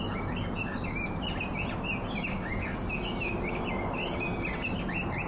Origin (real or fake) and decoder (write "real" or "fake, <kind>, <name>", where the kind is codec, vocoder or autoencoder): real